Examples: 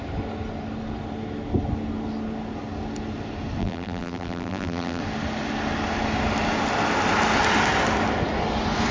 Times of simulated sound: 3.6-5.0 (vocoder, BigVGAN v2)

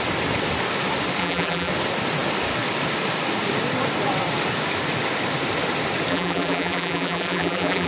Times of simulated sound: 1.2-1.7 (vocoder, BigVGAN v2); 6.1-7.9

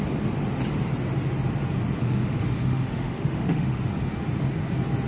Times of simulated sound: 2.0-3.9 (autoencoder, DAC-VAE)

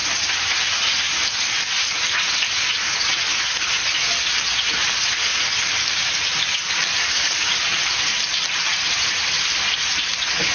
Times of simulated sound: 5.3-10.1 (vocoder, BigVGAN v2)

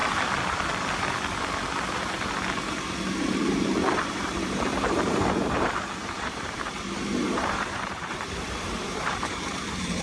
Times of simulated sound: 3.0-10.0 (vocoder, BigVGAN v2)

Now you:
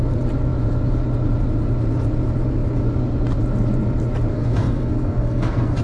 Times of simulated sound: 4.3-5.8 (codec, SNAC)